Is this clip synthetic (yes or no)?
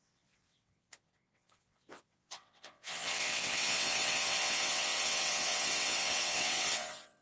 yes